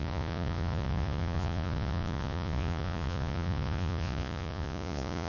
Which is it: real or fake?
fake